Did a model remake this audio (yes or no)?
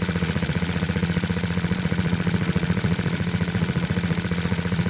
yes